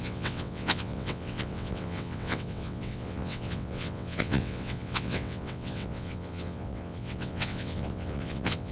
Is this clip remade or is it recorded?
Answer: remade